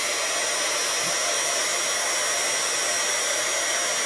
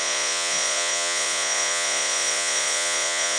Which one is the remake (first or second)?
second